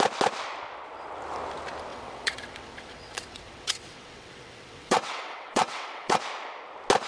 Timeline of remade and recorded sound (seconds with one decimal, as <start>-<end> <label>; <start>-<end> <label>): 0.0-1.9 recorded; 1.9-6.2 remade; 6.2-7.1 recorded